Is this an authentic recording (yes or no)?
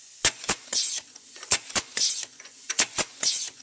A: no